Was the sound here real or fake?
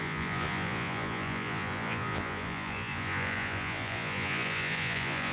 fake